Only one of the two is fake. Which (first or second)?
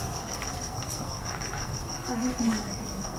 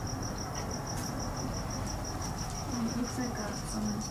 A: first